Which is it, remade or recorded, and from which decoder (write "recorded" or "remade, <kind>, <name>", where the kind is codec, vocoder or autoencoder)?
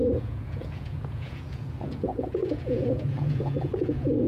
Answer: remade, vocoder, Vocos